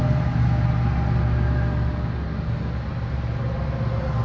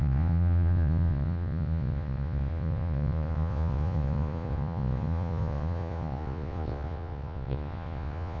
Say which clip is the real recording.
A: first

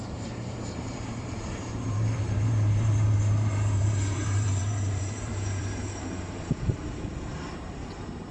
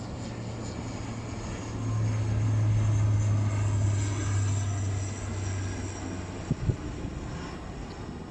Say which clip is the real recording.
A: second